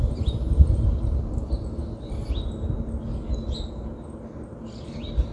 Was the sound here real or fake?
real